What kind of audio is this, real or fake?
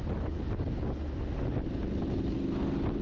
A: real